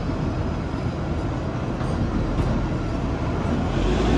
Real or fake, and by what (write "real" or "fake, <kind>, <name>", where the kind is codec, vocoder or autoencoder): real